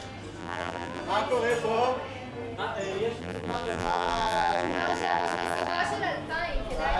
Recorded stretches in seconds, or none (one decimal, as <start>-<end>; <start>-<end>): 0.0-0.4; 1.0-3.2; 5.8-7.0